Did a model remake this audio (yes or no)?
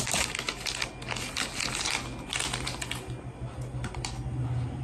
no